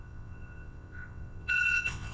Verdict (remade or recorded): remade